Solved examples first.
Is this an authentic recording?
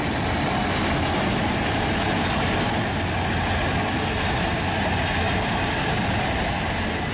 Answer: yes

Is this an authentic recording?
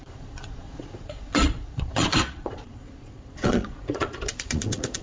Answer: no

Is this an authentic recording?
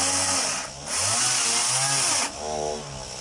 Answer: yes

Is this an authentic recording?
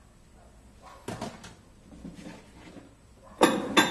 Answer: yes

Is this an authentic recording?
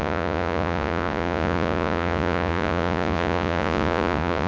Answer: no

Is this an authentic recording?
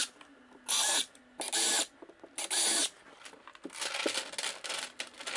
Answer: yes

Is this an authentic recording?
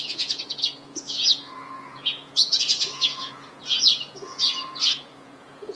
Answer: no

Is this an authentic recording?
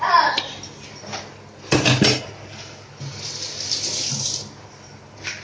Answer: yes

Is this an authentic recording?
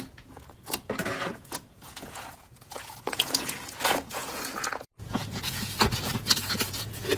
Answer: no